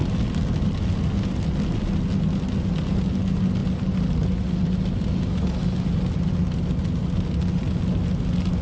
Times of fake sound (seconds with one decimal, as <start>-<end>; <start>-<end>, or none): none